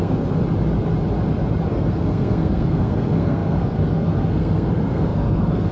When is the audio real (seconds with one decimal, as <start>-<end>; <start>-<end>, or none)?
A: 0.4-1.7